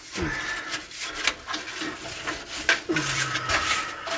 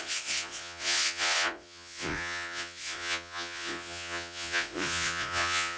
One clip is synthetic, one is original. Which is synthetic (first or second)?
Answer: second